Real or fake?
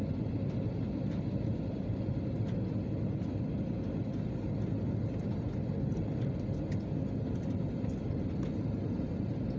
real